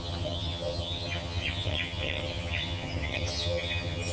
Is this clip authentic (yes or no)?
no